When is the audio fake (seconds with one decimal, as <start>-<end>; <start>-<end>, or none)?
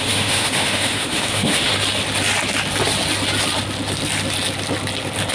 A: 0.0-1.7